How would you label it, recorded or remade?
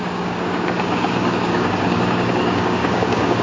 remade